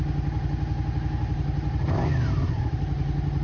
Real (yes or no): yes